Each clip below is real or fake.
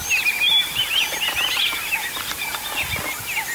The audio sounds real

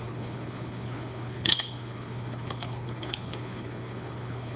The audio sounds fake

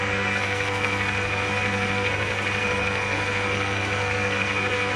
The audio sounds fake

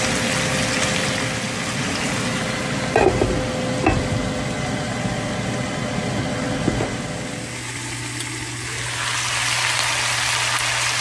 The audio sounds real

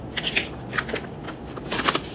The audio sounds real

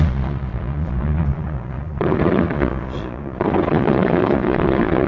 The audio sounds fake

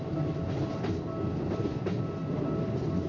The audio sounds real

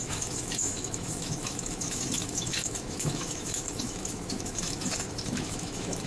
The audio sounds fake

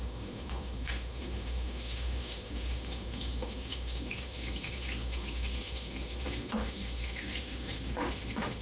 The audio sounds fake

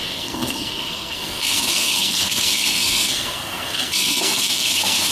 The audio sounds fake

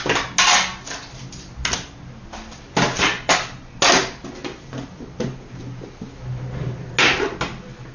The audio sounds real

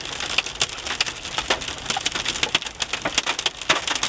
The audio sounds real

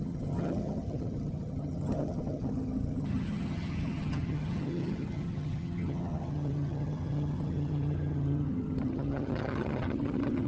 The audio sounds fake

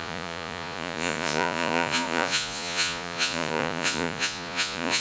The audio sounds fake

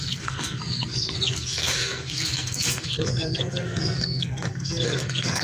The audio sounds fake